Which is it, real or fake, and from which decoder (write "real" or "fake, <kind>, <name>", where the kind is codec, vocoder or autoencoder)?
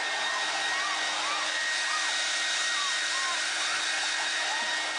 real